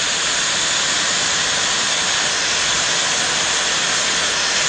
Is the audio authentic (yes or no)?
yes